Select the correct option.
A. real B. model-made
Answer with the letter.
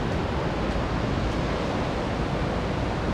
A